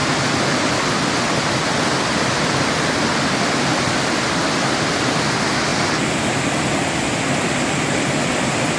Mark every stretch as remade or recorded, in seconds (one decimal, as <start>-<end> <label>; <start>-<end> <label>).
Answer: 0.0-8.8 recorded